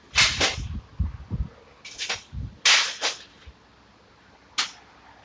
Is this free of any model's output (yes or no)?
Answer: yes